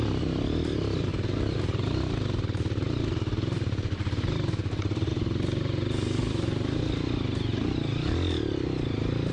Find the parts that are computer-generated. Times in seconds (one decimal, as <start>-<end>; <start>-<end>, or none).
6.2-6.8

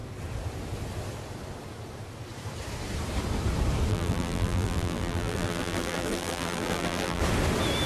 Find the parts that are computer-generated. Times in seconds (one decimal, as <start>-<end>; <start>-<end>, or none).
3.9-7.2

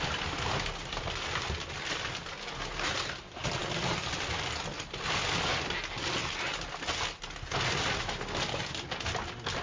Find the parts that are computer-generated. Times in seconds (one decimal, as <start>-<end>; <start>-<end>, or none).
none

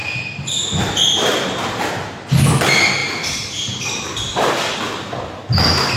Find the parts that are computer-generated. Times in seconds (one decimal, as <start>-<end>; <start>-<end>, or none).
3.0-3.9

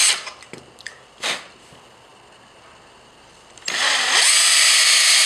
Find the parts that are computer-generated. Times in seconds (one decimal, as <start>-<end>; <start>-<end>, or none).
0.0-1.7; 2.1-5.3

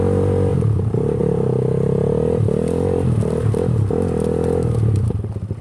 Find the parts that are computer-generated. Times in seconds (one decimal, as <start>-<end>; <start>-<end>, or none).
0.5-1.2